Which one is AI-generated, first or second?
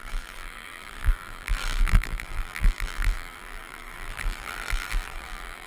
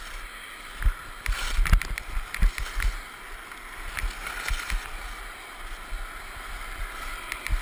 first